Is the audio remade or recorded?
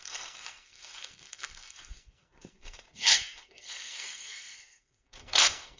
remade